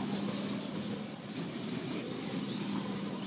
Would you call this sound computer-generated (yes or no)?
no